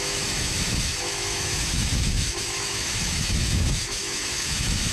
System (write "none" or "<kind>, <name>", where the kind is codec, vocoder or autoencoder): autoencoder, DAC-VAE